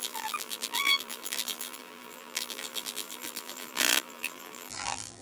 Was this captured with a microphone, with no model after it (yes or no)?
no